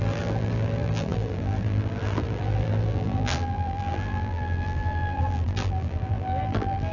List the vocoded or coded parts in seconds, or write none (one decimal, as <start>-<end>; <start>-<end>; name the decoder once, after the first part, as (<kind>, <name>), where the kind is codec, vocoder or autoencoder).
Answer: 0.0-6.9 (vocoder, BigVGAN v2)